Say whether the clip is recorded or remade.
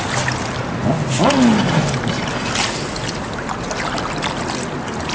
recorded